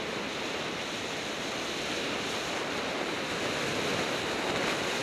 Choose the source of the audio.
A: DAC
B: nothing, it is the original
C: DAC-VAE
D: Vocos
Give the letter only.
B